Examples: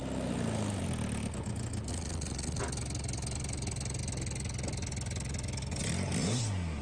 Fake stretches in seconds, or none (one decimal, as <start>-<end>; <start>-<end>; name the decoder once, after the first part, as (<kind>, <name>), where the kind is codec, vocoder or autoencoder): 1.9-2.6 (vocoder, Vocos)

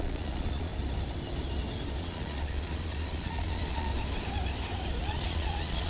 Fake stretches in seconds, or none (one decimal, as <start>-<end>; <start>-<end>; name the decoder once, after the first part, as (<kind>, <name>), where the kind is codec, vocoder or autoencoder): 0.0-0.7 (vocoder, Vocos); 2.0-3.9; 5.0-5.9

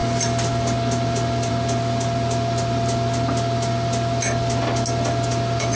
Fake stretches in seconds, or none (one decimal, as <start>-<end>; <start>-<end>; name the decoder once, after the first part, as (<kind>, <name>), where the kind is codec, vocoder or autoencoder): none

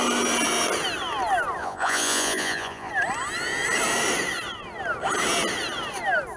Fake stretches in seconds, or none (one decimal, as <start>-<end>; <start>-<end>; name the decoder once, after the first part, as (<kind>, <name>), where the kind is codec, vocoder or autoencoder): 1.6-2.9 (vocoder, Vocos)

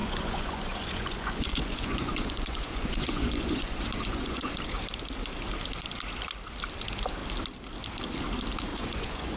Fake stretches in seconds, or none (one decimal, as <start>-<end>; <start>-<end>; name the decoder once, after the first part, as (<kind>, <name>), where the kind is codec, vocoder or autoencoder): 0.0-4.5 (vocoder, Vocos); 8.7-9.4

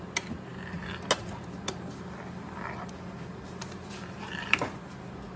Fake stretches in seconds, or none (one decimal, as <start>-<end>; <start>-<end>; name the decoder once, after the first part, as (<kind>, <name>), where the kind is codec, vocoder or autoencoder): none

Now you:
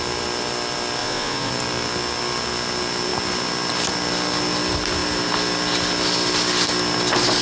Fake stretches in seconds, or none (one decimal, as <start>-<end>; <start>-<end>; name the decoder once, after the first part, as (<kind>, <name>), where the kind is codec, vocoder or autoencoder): 1.0-1.5 (vocoder, Vocos)

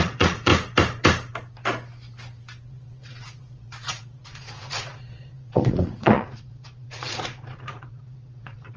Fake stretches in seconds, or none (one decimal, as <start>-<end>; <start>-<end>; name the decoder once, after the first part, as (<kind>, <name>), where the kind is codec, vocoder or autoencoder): 0.0-0.5 (vocoder, Vocos); 2.7-8.8